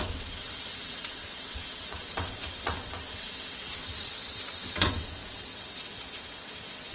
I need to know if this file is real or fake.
fake